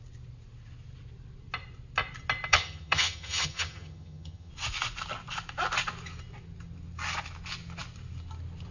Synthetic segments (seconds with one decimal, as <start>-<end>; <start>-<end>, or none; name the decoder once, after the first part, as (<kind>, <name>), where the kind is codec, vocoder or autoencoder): 2.5-4.5 (vocoder, HiFi-GAN)